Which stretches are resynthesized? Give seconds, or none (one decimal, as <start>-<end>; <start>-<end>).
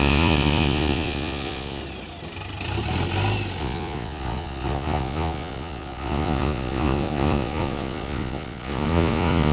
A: 0.0-1.8; 3.6-9.5